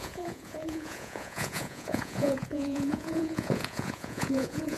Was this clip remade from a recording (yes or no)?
yes